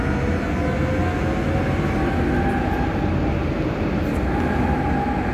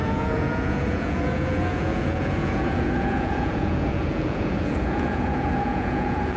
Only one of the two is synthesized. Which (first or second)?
second